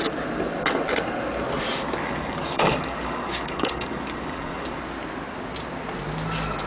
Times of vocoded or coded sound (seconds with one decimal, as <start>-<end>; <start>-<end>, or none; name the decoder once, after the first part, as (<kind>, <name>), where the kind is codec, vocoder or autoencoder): 2.0-4.8 (codec, DAC)